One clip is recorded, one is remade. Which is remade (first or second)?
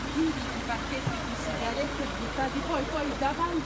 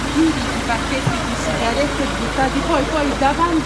first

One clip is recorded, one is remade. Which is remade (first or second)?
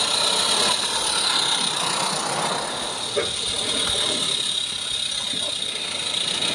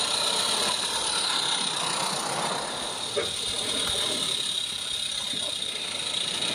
second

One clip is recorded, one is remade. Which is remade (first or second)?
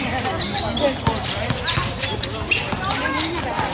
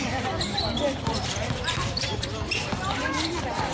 second